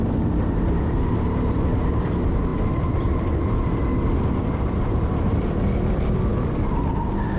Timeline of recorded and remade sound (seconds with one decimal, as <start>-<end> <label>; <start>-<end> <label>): 0.0-7.4 remade